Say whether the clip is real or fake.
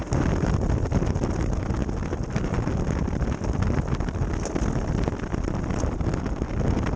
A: real